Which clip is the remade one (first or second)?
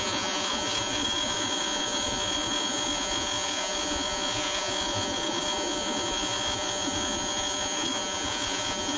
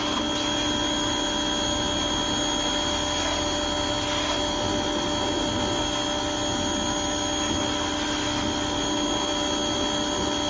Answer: first